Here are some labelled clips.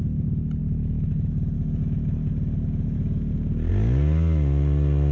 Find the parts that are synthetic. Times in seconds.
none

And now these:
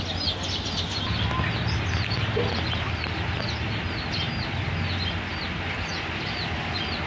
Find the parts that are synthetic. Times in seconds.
none